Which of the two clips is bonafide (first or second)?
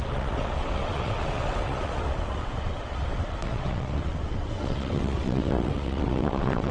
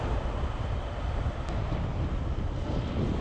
second